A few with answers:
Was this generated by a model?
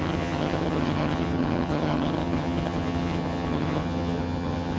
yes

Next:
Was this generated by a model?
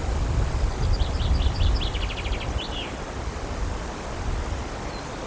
no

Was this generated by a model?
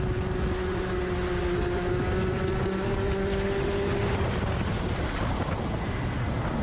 no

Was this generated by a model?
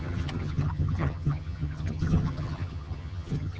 yes